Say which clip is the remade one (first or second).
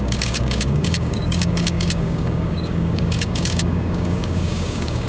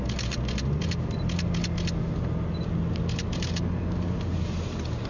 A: first